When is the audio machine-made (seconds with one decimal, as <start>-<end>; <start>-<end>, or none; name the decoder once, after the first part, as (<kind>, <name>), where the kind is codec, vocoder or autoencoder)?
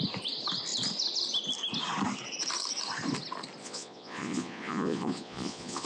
3.6-5.9 (vocoder, Vocos)